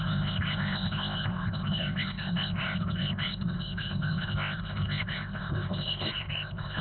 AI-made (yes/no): yes